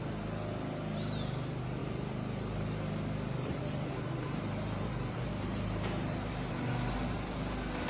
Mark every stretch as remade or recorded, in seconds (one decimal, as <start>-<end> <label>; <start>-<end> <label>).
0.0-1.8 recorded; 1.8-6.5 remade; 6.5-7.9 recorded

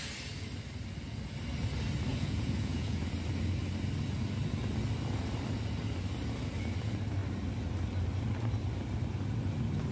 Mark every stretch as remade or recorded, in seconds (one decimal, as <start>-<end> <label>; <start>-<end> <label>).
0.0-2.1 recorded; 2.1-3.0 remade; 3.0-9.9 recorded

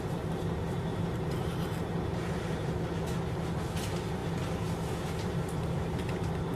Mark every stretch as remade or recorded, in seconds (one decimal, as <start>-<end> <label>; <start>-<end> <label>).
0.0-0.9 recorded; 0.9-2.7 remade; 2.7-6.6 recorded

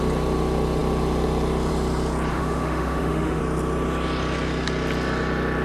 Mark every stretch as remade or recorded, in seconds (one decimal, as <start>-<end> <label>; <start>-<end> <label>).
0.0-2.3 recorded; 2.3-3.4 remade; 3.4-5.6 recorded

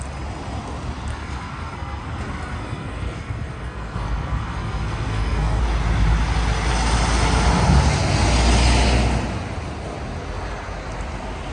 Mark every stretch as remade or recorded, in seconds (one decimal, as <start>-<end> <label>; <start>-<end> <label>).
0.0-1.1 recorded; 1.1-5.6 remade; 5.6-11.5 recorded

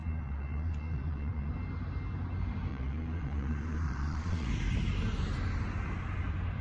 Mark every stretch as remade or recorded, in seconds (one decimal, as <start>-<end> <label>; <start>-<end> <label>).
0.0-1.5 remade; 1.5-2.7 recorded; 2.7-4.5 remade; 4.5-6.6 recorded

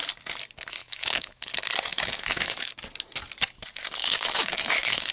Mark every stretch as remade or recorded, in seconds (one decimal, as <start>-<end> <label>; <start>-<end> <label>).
0.0-0.8 recorded; 0.8-1.5 remade; 1.5-1.9 recorded; 1.9-2.7 remade; 2.7-4.0 recorded; 4.0-5.1 remade

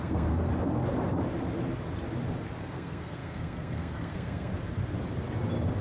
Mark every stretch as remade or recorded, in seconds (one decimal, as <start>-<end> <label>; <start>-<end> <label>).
0.0-0.5 remade; 0.5-2.6 recorded; 2.6-4.5 remade; 4.5-5.8 recorded